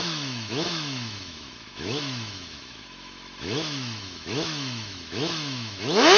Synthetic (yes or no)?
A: yes